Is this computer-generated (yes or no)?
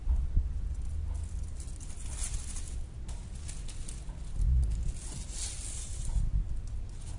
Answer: no